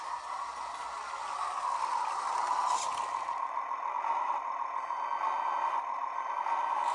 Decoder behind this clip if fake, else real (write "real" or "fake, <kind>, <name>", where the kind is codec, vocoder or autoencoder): real